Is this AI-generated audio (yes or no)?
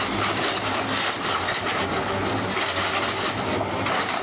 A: no